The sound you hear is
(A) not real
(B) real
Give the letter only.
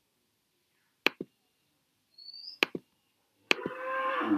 B